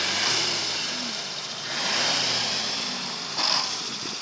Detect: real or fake fake